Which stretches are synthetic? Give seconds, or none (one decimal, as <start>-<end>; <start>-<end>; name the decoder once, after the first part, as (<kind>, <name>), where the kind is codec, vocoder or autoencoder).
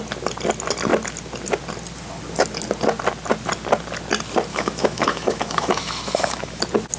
4.5-6.6 (autoencoder, DAC-VAE)